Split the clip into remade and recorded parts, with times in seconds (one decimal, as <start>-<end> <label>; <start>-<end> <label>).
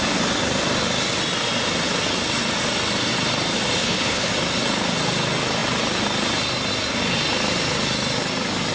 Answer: 0.0-3.8 recorded; 3.8-4.3 remade; 4.3-8.7 recorded